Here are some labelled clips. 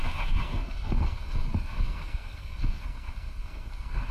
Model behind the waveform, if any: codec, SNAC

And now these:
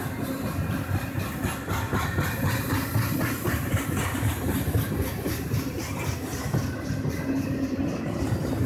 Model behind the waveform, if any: none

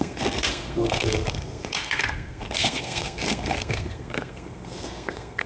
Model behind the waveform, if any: codec, SNAC